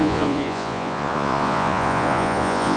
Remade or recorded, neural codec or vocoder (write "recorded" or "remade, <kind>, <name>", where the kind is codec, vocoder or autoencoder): remade, vocoder, Vocos